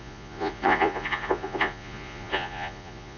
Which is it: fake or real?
fake